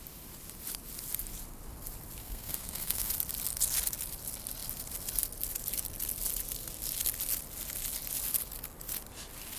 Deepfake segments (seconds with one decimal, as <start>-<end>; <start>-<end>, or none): 2.2-3.1